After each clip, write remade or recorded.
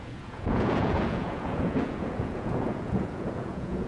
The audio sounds remade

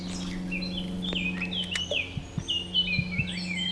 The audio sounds recorded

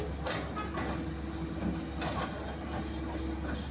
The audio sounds recorded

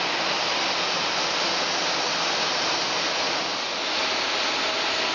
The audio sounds recorded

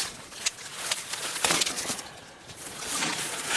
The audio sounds remade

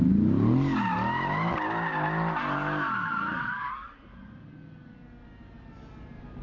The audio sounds recorded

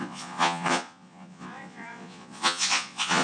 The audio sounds remade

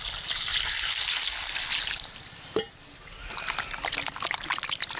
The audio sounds recorded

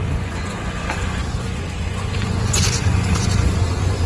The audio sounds remade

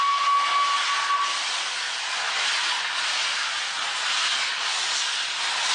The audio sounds recorded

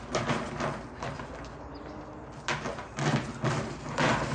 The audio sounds recorded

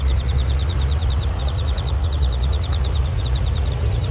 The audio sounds remade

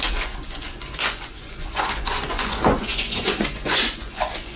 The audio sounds remade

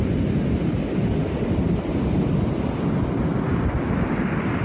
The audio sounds recorded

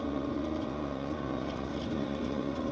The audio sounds remade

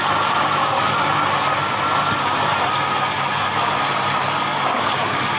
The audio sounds recorded